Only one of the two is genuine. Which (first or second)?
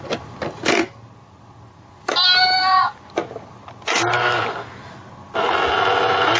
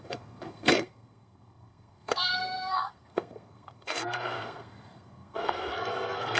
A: first